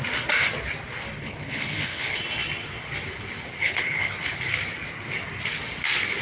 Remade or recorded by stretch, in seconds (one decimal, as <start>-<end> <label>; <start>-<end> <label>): 0.0-1.2 recorded; 1.2-2.2 remade; 2.2-3.6 recorded; 3.6-4.1 remade; 4.1-6.2 recorded